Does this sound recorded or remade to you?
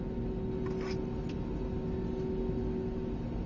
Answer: recorded